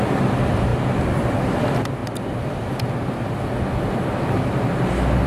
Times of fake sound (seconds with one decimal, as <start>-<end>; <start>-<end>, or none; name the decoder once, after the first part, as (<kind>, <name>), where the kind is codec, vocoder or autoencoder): none